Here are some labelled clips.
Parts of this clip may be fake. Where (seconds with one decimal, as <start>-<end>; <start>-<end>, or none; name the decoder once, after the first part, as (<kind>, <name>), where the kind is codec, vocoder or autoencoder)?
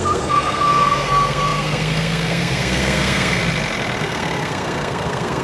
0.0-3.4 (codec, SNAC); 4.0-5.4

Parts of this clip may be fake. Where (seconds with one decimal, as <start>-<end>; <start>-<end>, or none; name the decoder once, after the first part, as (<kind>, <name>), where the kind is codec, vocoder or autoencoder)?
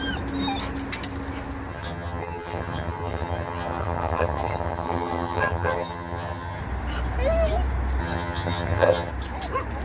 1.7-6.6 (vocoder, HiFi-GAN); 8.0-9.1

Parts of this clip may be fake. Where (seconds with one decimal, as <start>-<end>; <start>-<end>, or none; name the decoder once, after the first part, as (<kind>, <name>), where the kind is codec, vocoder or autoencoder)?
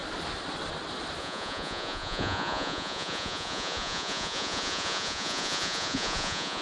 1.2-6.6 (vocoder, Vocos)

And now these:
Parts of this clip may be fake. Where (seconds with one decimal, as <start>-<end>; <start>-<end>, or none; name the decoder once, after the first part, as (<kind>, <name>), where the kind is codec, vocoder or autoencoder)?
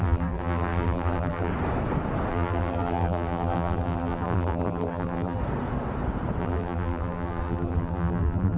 0.0-1.5 (vocoder, BigVGAN v2); 2.3-5.4; 6.4-8.6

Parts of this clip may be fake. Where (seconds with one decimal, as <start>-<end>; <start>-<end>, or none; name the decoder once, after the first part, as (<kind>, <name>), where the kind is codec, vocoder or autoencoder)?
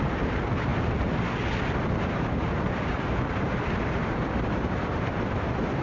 0.0-0.7 (vocoder, BigVGAN v2); 1.9-5.8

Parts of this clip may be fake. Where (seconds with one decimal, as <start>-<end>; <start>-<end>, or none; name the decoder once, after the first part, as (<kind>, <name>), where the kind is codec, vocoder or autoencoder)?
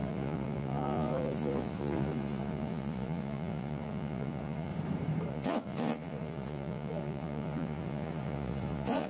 0.0-4.7 (vocoder, Vocos); 5.3-9.1